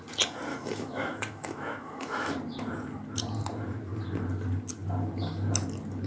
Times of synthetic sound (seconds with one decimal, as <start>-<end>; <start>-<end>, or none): 0.5-2.3